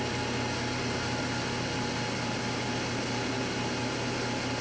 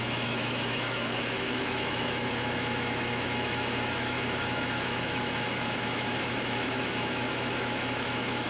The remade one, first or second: second